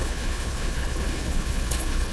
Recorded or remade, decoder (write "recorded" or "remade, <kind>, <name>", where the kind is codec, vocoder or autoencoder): remade, codec, HILCodec